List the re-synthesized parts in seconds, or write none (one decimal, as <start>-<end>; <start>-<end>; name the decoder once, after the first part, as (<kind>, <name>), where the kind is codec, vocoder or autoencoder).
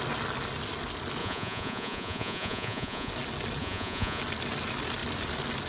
1.2-3.1 (vocoder, Vocos); 3.6-4.2